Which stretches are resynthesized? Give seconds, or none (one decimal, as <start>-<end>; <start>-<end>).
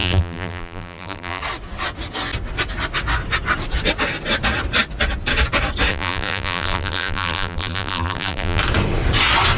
0.0-1.4; 5.9-8.6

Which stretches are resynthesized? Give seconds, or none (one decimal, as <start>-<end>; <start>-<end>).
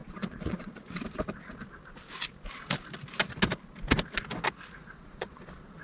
0.0-1.0; 4.8-5.8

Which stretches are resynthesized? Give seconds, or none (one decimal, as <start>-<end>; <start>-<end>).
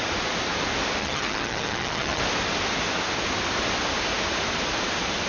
1.0-2.2